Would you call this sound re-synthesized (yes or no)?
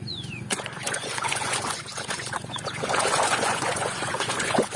yes